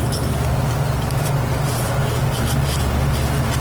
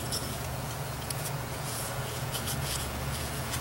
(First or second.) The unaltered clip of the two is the first